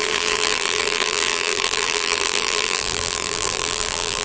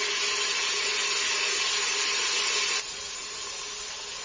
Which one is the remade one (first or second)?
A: first